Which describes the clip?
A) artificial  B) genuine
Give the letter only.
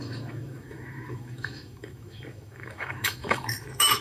A